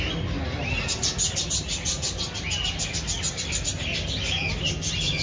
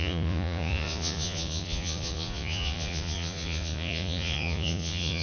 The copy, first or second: second